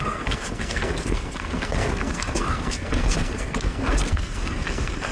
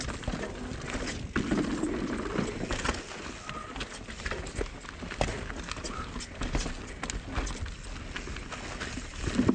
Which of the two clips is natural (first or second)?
second